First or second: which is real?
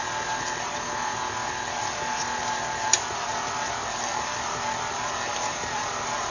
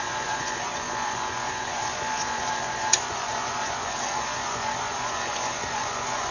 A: first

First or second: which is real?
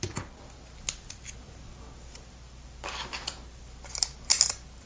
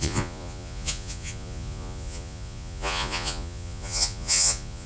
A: first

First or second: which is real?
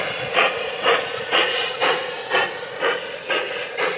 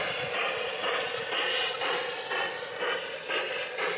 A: second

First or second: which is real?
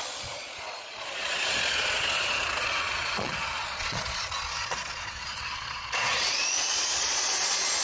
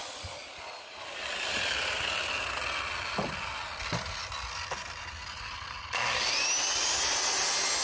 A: second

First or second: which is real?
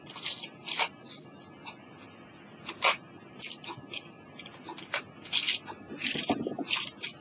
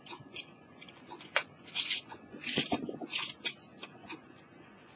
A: first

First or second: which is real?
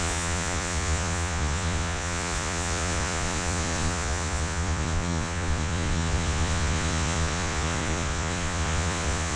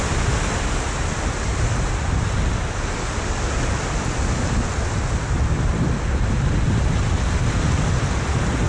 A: second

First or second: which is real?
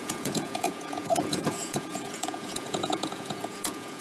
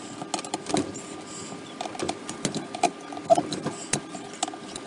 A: second